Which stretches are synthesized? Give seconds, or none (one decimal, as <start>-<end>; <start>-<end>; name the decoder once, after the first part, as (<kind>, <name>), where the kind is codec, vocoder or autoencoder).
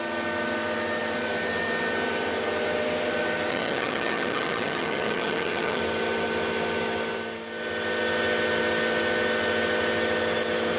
3.5-5.8 (vocoder, HiFi-GAN)